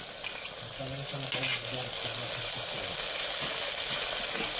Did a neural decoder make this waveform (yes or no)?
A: no